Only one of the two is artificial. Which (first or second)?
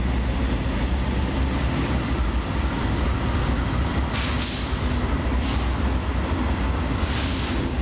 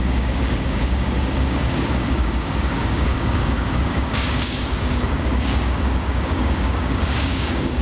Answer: second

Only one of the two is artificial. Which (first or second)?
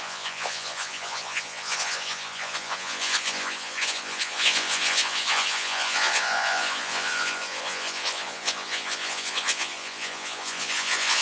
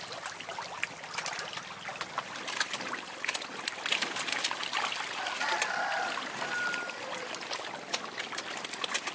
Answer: first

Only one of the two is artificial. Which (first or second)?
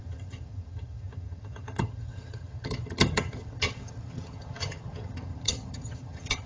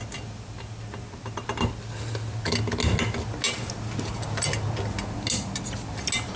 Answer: first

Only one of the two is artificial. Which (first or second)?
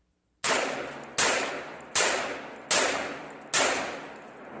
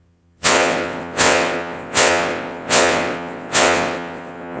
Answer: second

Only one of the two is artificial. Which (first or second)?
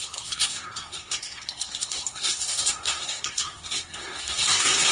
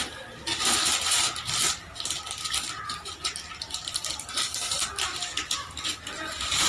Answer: first